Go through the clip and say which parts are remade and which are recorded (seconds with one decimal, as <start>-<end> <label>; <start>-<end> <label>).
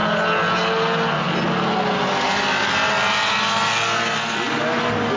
0.0-5.2 recorded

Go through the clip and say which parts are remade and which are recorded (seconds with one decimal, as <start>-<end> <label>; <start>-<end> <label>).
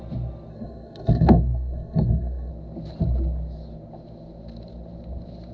0.0-0.5 recorded; 0.5-2.5 remade; 2.5-5.5 recorded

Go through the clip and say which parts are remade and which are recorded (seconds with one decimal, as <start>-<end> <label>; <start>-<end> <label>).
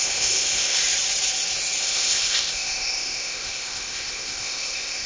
0.0-0.8 remade; 0.8-1.8 recorded; 1.8-5.1 remade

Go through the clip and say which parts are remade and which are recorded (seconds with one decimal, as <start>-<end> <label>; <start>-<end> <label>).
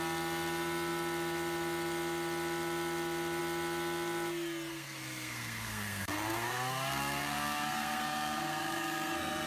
0.0-4.7 recorded; 4.7-9.5 remade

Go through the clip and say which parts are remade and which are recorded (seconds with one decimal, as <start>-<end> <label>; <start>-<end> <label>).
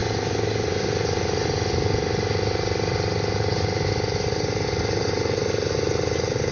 0.0-6.5 recorded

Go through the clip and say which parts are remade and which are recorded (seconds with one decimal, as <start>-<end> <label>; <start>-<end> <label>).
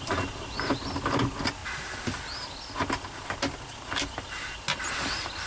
0.0-5.5 recorded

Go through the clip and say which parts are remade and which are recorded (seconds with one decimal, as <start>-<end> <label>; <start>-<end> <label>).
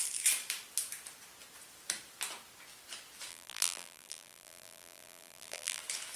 0.0-3.3 recorded; 3.3-5.8 remade; 5.8-6.2 recorded